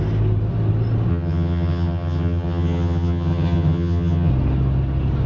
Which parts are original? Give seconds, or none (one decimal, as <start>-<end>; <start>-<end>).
0.0-1.1; 4.3-5.3